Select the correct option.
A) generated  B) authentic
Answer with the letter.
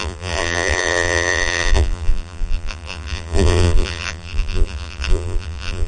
A